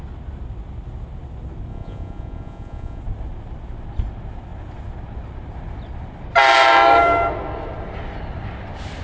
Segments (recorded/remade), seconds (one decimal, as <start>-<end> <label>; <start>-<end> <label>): 0.0-1.7 recorded; 1.7-3.0 remade; 3.0-9.0 recorded